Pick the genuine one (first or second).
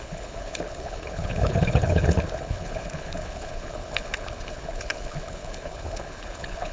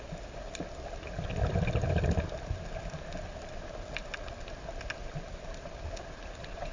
second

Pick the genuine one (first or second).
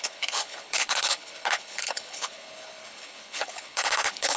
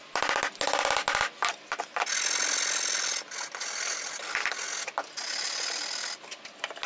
second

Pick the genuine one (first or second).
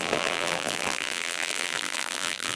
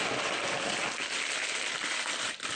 second